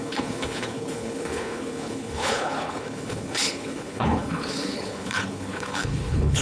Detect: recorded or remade remade